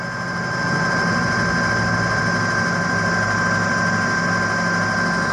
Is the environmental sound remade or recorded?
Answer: recorded